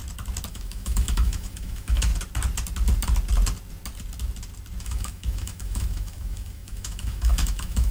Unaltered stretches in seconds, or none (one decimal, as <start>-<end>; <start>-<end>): 0.0-0.5; 2.1-4.8